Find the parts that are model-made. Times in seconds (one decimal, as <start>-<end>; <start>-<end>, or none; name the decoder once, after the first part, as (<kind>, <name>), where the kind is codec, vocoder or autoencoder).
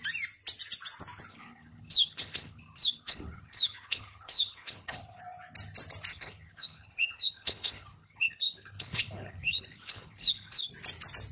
1.3-5.2 (codec, HILCodec); 6.1-10.7